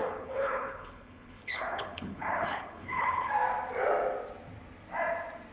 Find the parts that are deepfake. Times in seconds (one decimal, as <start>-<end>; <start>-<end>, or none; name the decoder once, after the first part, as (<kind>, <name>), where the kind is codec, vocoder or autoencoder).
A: 0.0-3.3 (codec, HILCodec)